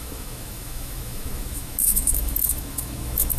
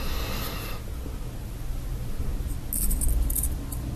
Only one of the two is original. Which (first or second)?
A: second